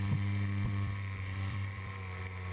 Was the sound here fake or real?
fake